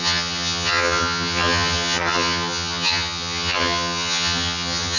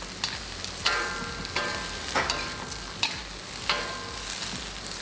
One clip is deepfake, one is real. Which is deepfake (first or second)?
first